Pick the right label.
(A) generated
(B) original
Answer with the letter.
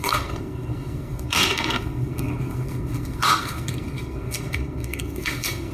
A